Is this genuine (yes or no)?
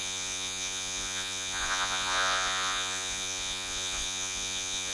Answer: no